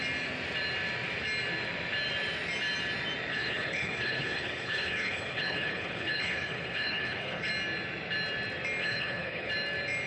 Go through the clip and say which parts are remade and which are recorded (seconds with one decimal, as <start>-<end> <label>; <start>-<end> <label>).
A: 0.0-3.3 recorded; 3.3-7.5 remade; 7.5-8.8 recorded; 8.8-9.5 remade; 9.5-10.1 recorded